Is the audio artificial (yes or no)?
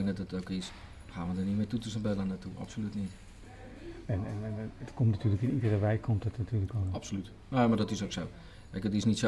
no